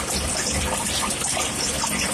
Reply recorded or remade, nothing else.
remade